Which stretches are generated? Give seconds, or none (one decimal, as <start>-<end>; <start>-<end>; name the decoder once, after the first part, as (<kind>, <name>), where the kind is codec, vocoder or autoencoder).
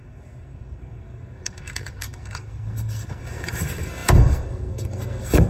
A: 0.0-5.5 (codec, SNAC)